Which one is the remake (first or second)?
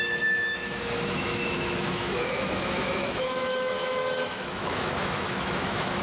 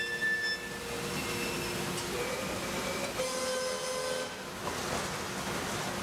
first